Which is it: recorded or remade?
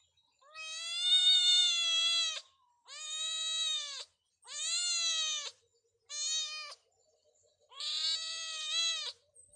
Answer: recorded